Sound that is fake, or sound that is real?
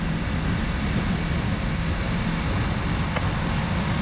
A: real